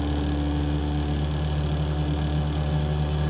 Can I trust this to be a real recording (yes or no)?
yes